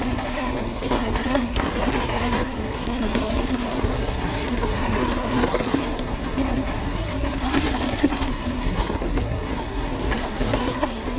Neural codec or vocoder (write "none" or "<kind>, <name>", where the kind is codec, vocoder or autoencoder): codec, SNAC